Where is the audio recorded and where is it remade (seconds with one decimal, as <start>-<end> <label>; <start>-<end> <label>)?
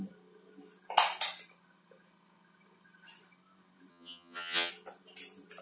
0.0-3.9 recorded; 3.9-4.7 remade; 4.7-5.6 recorded